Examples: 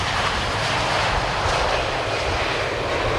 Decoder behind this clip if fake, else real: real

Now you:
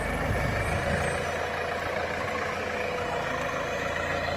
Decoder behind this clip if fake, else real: real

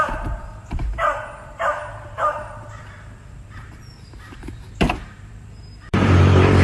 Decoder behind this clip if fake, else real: fake, vocoder, BigVGAN v2